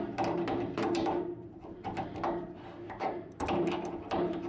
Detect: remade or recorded remade